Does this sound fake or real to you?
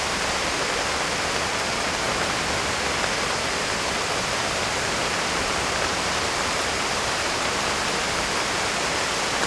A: fake